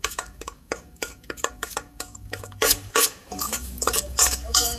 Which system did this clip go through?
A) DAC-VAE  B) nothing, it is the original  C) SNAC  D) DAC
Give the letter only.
D